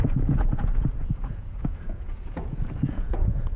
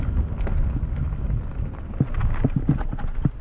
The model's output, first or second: first